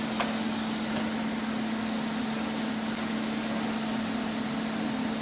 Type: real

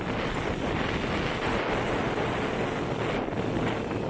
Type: real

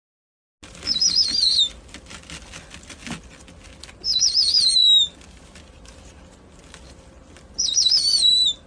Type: real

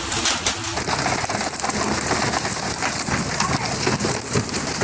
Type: real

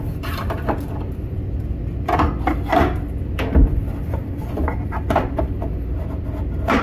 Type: real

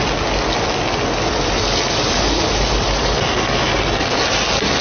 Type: real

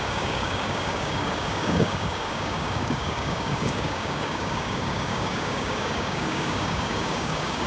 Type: fake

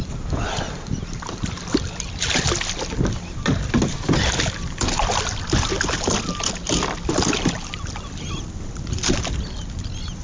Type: real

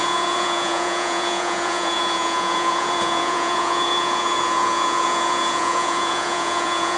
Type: fake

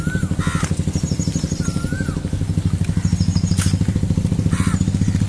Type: real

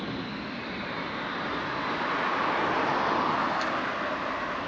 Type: real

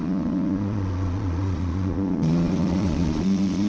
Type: fake